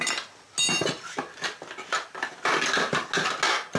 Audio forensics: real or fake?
real